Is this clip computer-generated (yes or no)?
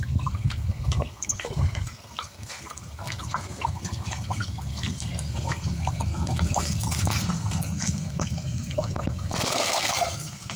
yes